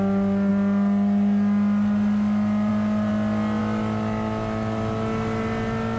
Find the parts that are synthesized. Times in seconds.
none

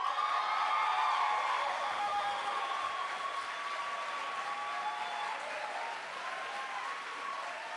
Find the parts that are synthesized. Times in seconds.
1.6-2.6 (autoencoder, DAC-VAE)

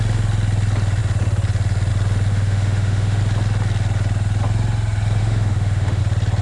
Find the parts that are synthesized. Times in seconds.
2.3-3.2 (autoencoder, DAC-VAE); 5.2-6.0

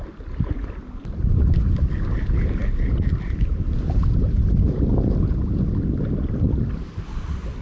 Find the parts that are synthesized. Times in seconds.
none

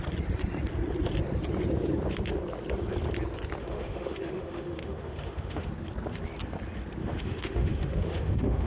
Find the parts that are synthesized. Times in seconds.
3.6-5.7 (autoencoder, DAC-VAE); 7.0-8.7

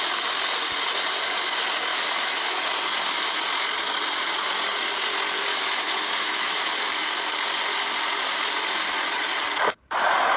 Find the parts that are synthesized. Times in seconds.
1.9-2.6 (autoencoder, DAC-VAE); 5.5-6.7

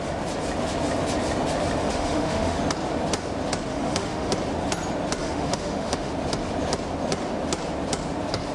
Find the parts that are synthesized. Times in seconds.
1.8-2.6 (autoencoder, DAC-VAE); 3.7-4.3; 5.2-6.1

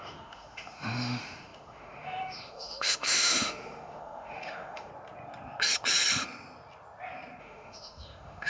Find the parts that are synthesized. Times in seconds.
0.0-4.9 (autoencoder, DAC-VAE); 7.4-8.5